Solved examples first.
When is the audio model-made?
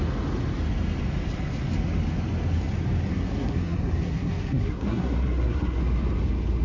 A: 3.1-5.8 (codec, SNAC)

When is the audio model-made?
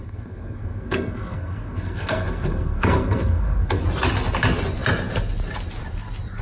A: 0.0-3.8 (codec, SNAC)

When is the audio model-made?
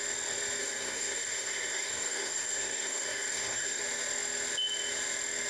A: 0.6-3.8 (codec, SNAC)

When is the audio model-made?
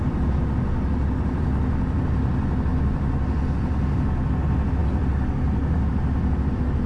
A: none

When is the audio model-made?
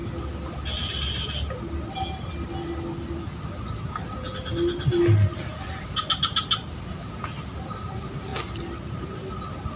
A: none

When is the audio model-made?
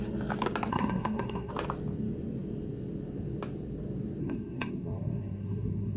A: 0.7-1.5 (codec, SNAC); 4.2-6.0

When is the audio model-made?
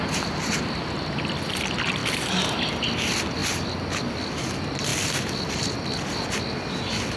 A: none